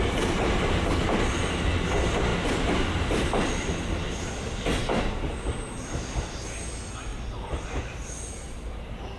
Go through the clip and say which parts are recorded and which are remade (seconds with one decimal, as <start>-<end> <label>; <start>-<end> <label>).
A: 0.0-9.2 recorded